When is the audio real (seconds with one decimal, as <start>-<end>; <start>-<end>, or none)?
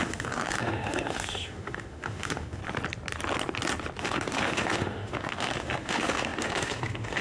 2.6-4.0